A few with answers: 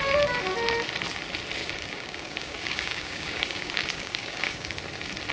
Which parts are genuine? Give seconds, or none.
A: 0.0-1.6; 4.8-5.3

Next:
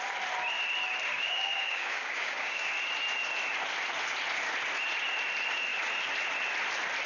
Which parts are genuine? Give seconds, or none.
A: 0.0-1.1; 2.7-7.1